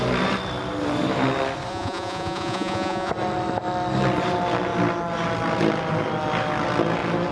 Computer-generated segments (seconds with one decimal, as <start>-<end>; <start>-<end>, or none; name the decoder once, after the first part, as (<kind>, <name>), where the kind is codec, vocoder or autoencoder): 1.7-3.1 (vocoder, Vocos)